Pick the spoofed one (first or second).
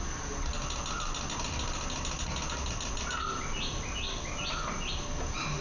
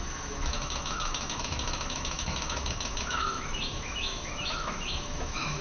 second